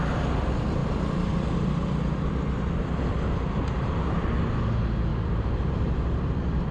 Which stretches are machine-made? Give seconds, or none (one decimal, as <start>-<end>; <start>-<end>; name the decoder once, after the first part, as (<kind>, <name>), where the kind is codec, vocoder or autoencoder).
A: 0.8-2.1 (vocoder, BigVGAN v2); 5.1-6.7